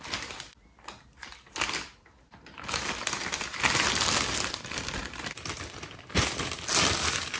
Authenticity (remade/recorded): recorded